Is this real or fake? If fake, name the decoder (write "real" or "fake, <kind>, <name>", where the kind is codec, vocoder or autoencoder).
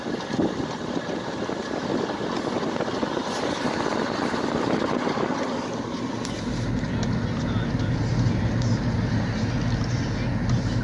real